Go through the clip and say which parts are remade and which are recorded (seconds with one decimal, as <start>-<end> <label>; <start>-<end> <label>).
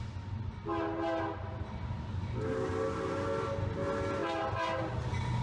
0.0-5.4 recorded